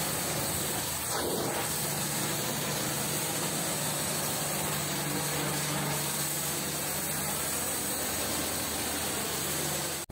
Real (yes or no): yes